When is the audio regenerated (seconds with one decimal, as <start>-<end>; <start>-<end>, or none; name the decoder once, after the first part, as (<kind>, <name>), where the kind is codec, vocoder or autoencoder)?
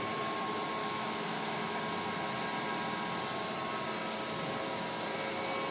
0.8-1.8 (autoencoder, DAC-VAE)